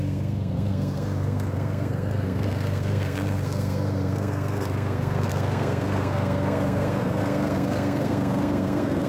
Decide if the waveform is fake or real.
fake